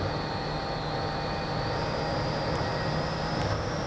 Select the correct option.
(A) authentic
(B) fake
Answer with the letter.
A